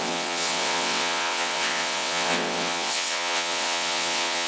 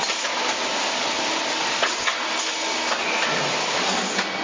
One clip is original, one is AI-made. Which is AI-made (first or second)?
first